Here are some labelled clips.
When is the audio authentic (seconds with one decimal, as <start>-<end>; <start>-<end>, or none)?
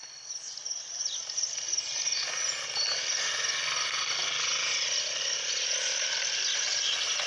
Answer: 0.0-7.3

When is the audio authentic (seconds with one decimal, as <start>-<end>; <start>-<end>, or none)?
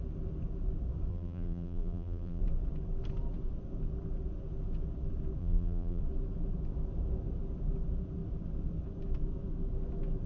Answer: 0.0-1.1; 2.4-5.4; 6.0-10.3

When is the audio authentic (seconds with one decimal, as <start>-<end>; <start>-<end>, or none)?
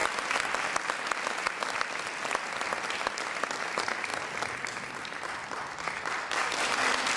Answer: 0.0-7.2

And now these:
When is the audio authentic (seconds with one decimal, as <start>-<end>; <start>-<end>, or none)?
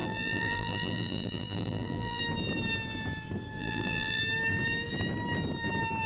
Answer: 2.2-3.6; 4.2-6.1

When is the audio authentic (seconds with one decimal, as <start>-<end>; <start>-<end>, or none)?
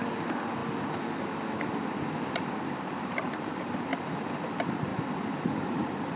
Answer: 0.6-2.5; 3.9-4.5; 4.9-5.7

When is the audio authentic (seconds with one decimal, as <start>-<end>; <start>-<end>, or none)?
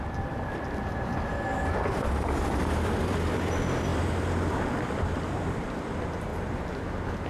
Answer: 6.3-7.3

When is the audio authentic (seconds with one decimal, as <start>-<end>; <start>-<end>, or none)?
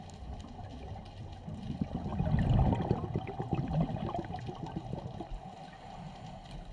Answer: 0.0-6.7